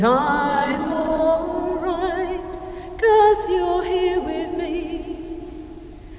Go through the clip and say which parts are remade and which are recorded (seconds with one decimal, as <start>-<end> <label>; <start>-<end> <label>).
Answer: 0.0-0.5 recorded; 0.5-1.2 remade; 1.2-6.2 recorded